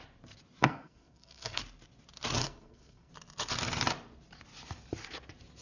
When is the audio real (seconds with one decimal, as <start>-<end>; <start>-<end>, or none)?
0.0-0.6; 1.6-2.4; 3.1-5.6